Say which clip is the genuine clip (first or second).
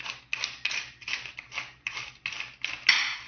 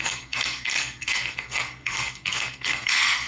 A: first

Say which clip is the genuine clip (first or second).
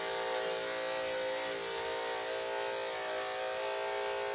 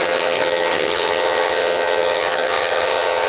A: first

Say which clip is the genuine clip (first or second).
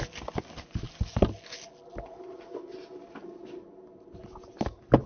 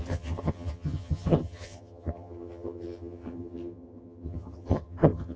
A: first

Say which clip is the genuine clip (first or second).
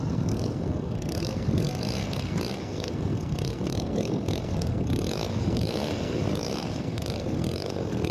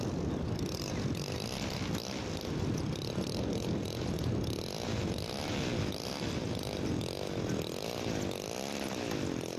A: second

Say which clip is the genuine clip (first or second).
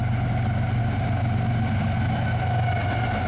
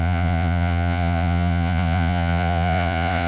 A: first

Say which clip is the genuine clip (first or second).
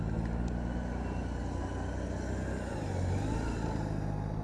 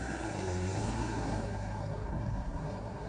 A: first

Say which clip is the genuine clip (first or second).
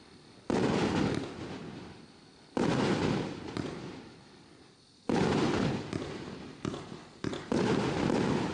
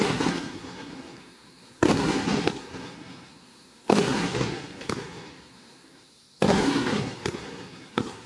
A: first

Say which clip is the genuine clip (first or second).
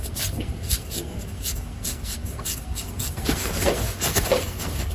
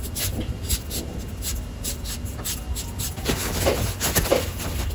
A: second